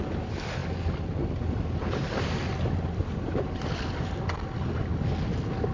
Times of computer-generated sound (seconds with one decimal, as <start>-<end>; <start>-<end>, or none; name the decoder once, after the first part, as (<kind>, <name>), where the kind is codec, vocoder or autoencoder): none